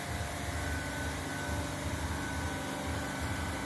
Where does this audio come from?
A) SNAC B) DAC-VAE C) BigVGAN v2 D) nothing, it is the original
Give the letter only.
D